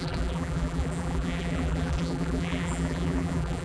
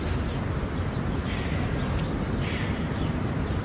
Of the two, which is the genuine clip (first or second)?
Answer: second